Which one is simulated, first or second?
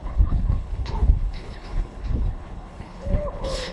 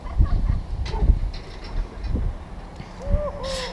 first